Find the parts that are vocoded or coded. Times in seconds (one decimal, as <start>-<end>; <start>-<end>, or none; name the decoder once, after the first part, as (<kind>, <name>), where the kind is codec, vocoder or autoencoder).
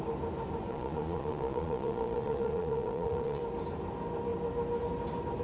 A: 0.7-3.4 (vocoder, Vocos)